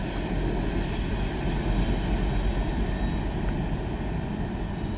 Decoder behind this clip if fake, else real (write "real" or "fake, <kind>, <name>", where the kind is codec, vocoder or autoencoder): real